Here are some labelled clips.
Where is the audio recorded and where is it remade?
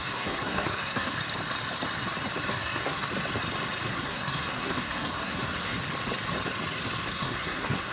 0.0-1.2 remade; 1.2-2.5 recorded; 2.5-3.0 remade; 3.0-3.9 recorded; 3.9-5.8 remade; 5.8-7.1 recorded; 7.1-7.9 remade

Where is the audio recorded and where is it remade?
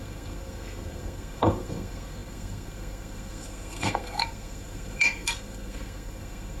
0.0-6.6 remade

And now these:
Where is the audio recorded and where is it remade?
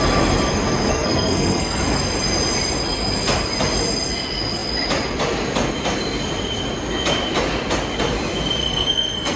0.0-0.9 recorded; 0.9-1.8 remade; 1.8-8.6 recorded; 8.6-9.4 remade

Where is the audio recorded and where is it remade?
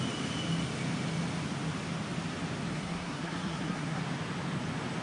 0.0-2.7 recorded; 2.7-4.0 remade; 4.0-5.0 recorded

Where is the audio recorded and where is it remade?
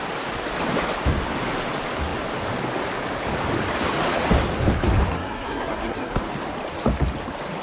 0.0-5.1 recorded; 5.1-6.2 remade; 6.2-7.6 recorded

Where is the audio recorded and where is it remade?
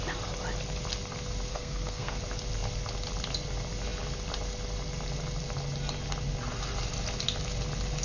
0.0-1.5 recorded; 1.5-2.2 remade; 2.2-8.0 recorded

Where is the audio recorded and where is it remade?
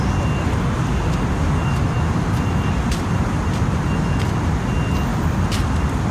0.0-6.1 recorded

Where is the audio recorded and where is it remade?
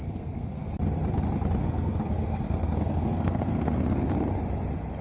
0.0-0.7 remade; 0.7-1.6 recorded; 1.6-4.1 remade; 4.1-5.0 recorded